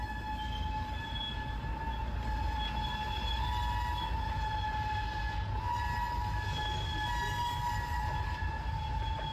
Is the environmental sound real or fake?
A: real